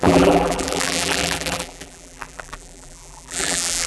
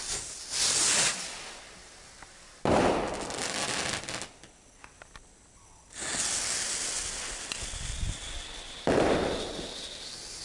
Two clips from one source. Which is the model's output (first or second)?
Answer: first